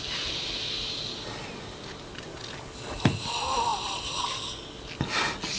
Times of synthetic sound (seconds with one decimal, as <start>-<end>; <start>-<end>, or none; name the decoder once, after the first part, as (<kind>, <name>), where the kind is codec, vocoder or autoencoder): none